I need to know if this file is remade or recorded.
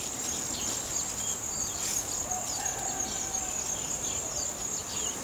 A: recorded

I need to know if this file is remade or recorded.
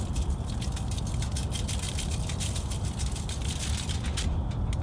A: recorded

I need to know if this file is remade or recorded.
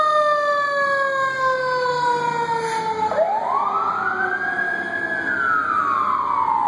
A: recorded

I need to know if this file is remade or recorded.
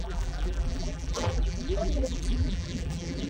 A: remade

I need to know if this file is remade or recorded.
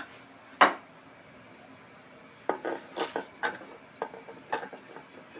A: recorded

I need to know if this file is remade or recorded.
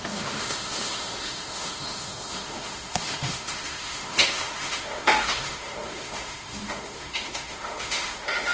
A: remade